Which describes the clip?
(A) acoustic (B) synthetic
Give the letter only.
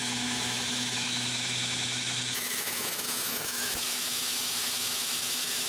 B